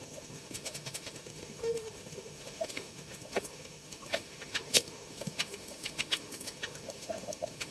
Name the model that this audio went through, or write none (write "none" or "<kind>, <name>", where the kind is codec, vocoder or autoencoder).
autoencoder, DAC-VAE